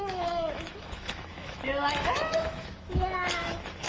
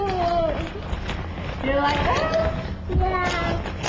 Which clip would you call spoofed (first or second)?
first